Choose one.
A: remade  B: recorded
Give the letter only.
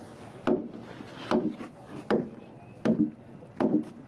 B